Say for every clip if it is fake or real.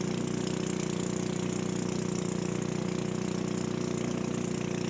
real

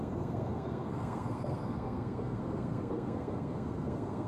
fake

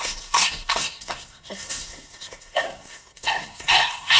fake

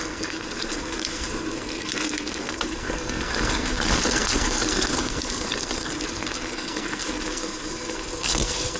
fake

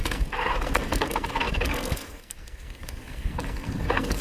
fake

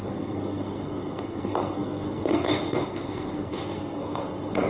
fake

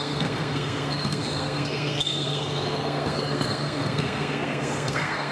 fake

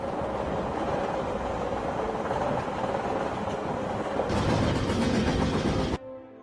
real